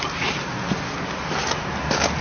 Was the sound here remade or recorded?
recorded